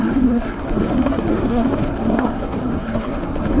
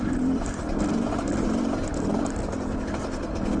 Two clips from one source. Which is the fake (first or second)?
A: first